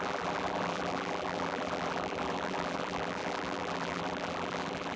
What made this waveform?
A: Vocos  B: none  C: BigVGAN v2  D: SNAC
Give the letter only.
C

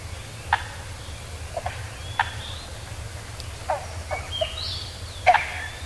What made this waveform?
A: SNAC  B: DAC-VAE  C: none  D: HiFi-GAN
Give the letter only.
C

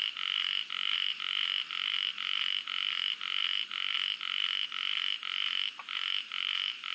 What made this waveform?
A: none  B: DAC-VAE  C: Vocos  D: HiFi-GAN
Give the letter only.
A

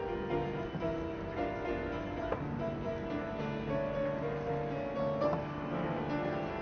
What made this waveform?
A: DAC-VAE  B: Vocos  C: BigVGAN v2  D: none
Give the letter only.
D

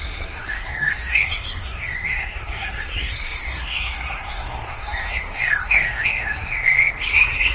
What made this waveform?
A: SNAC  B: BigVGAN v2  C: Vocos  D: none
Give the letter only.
A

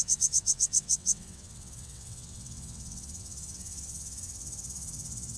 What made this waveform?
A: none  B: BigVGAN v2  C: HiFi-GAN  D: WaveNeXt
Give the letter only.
D